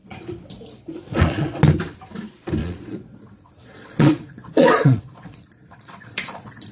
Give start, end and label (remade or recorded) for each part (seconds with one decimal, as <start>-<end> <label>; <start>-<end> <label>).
0.0-1.6 remade; 1.6-2.6 recorded; 2.6-6.7 remade

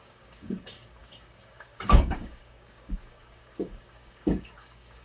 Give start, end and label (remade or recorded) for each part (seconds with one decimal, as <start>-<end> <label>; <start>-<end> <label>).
0.0-5.0 remade

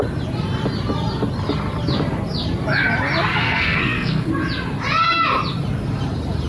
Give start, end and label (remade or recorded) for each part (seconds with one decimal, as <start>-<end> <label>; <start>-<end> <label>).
0.0-3.4 recorded; 3.4-4.3 remade; 4.3-6.5 recorded